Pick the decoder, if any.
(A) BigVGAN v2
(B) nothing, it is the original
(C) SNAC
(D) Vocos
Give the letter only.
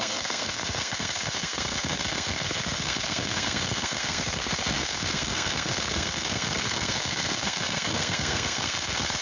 C